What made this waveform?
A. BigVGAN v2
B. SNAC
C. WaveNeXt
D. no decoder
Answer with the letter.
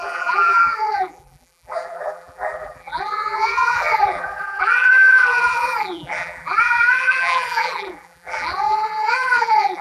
A